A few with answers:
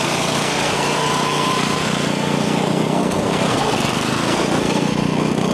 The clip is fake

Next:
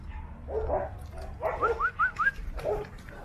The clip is real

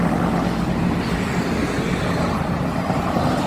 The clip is real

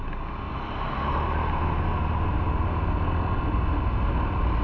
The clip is real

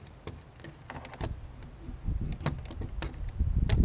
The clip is real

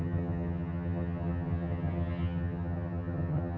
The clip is fake